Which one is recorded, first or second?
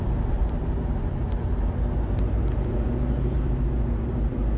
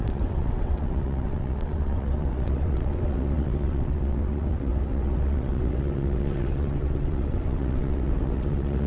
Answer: first